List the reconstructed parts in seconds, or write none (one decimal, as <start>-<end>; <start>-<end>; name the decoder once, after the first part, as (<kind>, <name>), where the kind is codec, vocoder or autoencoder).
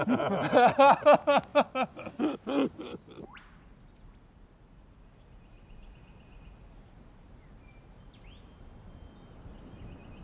1.5-2.2 (vocoder, Vocos)